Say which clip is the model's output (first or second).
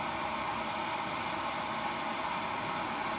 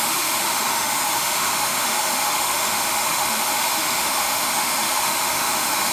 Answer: second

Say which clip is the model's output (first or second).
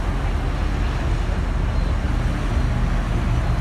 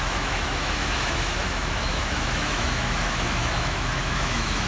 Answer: second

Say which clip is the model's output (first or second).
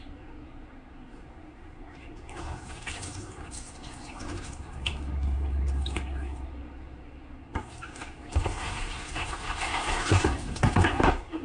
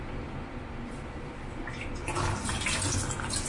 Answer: first